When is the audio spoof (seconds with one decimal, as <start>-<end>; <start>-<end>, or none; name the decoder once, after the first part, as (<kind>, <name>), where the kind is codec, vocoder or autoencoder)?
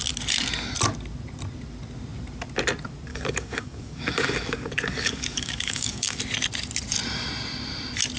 3.1-6.2 (codec, DAC)